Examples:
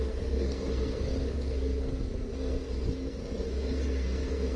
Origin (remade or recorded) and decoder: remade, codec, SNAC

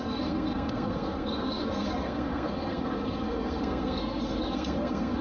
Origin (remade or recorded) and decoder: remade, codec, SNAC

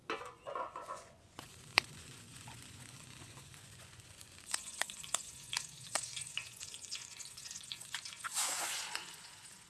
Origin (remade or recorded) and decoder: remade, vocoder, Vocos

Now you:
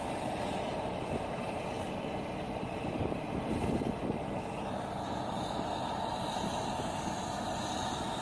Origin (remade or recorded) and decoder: recorded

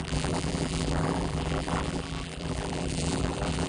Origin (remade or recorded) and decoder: remade, vocoder, BigVGAN v2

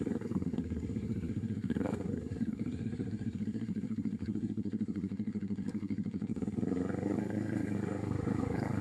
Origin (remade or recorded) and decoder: remade, codec, SNAC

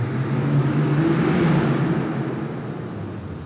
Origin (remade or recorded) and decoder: recorded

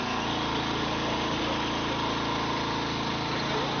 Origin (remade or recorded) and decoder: recorded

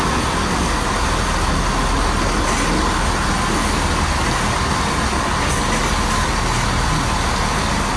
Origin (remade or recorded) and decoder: recorded